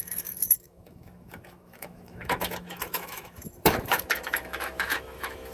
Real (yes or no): no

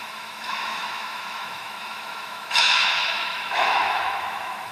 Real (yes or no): no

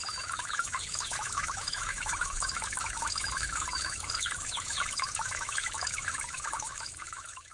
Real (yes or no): no